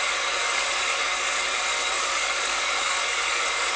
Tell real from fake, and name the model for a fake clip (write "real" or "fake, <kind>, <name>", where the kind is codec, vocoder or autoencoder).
fake, codec, DAC